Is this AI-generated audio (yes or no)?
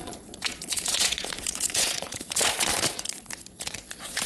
yes